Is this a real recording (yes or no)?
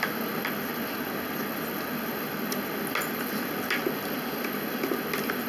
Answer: yes